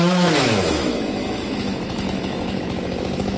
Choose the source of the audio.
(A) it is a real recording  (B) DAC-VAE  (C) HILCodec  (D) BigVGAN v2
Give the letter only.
B